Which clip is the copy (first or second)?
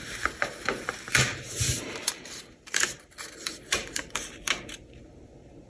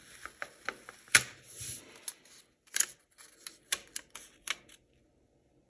first